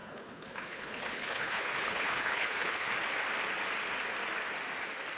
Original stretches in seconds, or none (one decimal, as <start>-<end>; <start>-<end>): 2.9-5.2